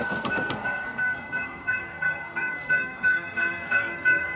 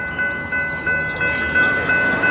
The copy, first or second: first